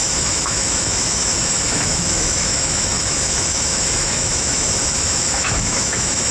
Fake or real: fake